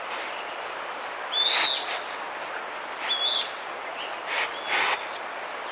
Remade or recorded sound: recorded